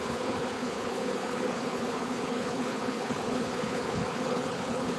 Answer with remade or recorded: remade